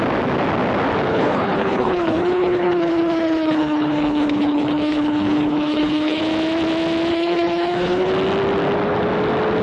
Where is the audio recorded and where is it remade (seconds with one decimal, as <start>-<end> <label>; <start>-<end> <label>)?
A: 0.0-1.1 recorded; 1.1-6.2 remade; 6.2-7.1 recorded; 7.1-8.1 remade; 8.1-9.6 recorded